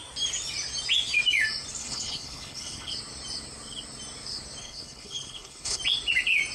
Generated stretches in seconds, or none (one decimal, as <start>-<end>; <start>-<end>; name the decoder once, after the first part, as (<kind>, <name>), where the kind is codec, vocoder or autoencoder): 1.8-2.9 (codec, HILCodec); 4.6-5.8